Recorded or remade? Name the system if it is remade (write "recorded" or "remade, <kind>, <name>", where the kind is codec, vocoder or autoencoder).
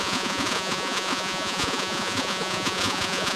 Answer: remade, vocoder, Vocos